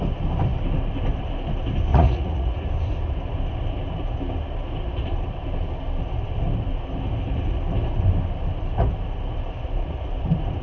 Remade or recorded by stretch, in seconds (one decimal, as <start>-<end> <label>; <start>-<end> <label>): 0.0-1.9 recorded; 1.9-2.7 remade; 2.7-10.6 recorded